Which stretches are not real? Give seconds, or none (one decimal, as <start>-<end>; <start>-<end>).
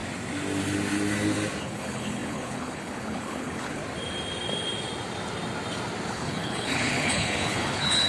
1.6-3.8; 6.1-8.1